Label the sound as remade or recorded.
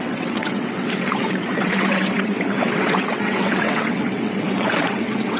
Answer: remade